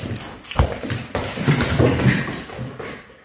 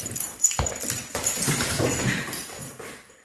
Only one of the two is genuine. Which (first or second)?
first